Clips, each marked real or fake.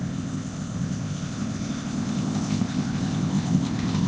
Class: fake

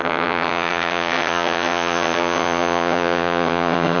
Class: fake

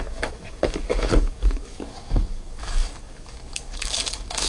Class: fake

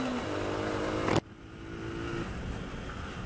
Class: real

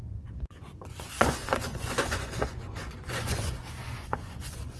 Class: fake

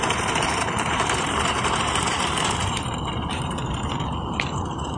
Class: fake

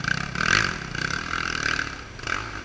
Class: real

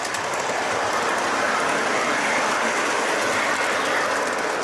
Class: real